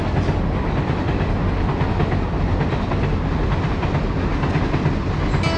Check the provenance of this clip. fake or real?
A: real